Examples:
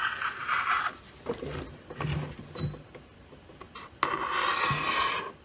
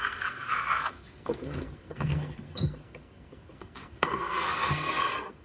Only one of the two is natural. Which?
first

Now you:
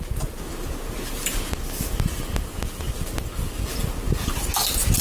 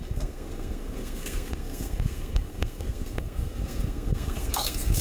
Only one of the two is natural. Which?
first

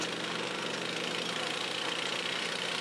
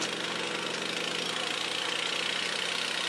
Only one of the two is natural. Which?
second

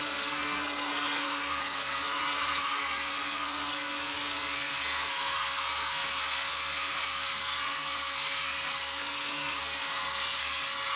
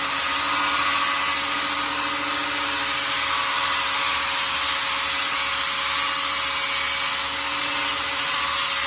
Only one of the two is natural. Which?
second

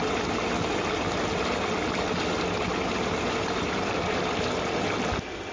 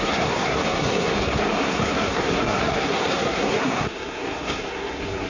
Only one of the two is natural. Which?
first